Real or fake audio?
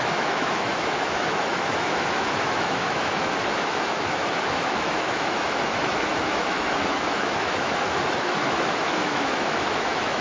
fake